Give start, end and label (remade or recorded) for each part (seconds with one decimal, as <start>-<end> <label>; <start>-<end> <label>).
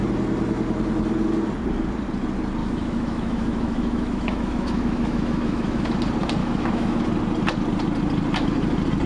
0.0-2.6 recorded; 2.6-6.0 remade; 6.0-6.4 recorded; 6.4-7.0 remade; 7.0-9.1 recorded